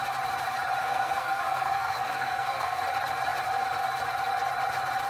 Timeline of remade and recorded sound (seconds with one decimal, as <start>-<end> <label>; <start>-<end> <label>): 0.0-0.8 recorded; 0.8-2.8 remade; 2.8-5.1 recorded